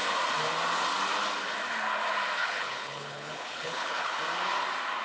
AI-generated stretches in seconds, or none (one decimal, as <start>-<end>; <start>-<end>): 2.4-4.2